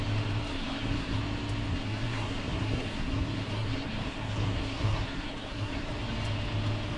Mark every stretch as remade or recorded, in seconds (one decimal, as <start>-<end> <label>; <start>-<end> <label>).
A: 0.0-0.5 recorded; 0.5-1.2 remade; 1.2-1.7 recorded; 1.7-5.9 remade; 5.9-7.0 recorded